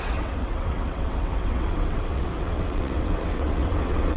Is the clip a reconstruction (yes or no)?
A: yes